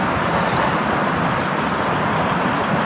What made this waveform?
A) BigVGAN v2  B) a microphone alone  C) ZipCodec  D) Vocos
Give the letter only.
B